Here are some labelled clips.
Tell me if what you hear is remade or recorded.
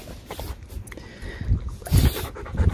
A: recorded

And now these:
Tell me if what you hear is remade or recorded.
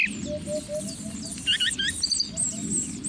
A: recorded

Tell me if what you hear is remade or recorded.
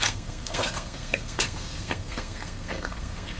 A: remade